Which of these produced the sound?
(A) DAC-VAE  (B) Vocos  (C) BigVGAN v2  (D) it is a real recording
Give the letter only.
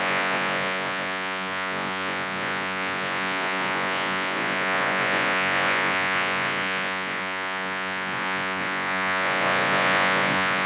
B